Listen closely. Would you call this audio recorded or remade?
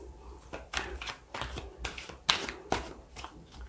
recorded